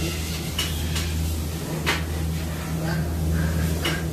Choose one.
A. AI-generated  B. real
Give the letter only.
B